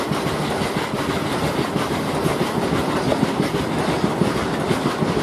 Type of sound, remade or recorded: recorded